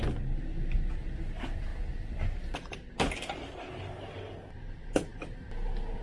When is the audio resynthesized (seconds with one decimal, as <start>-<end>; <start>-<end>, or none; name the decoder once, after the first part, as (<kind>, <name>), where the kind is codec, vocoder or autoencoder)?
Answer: none